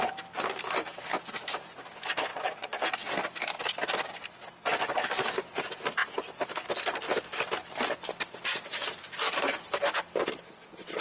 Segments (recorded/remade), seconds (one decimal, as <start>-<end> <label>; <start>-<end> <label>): 0.0-2.3 recorded; 2.3-2.8 remade; 2.8-11.0 recorded

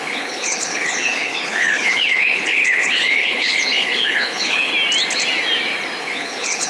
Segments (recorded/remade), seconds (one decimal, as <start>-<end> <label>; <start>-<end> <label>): 0.0-4.7 remade; 4.7-6.0 recorded; 6.0-6.7 remade

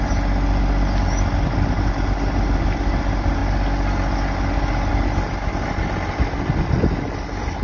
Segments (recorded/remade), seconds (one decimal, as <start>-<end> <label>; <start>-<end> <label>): 0.0-7.6 recorded